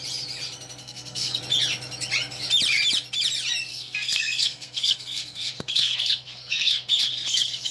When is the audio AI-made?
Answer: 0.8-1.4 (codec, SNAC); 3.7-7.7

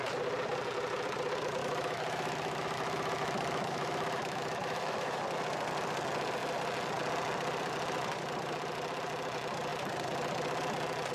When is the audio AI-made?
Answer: 1.6-5.2 (autoencoder, DAC-VAE)

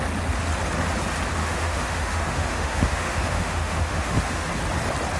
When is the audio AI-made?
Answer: 1.4-4.5 (autoencoder, DAC-VAE)

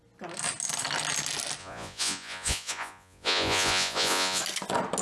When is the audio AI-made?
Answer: 1.6-4.4 (vocoder, Vocos)

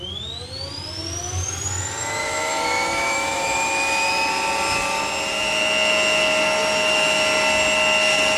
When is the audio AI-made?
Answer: 2.2-4.3 (autoencoder, DAC-VAE)

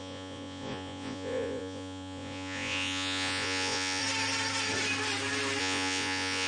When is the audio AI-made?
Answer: 0.0-4.0 (vocoder, Vocos); 5.6-6.5